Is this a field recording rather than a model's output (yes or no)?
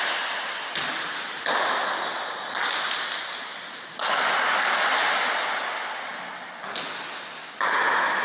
yes